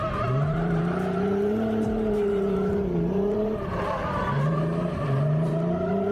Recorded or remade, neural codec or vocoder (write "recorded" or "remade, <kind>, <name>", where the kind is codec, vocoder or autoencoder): remade, vocoder, BigVGAN v2